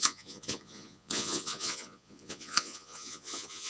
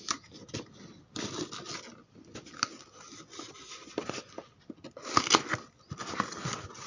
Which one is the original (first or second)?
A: second